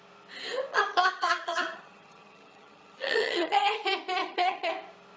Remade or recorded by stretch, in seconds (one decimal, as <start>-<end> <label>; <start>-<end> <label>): 0.0-0.7 recorded; 0.7-3.8 remade; 3.8-4.2 recorded; 4.2-4.7 remade; 4.7-5.2 recorded